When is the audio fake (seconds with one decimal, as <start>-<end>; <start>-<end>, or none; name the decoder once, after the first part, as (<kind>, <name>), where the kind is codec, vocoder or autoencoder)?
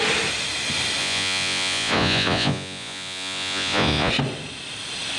1.0-4.1 (vocoder, Vocos)